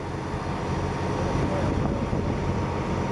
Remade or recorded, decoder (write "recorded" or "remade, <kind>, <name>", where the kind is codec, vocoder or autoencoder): recorded